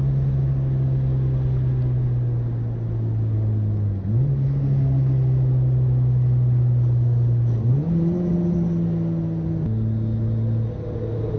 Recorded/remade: recorded